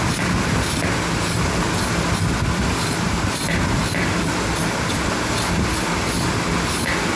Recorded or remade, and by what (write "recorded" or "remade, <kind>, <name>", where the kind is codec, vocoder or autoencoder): recorded